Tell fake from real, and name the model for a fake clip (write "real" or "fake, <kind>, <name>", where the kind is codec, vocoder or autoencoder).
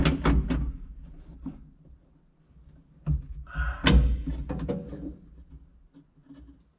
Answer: real